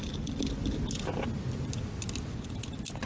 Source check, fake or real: real